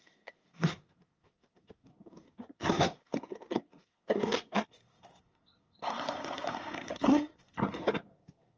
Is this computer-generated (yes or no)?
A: yes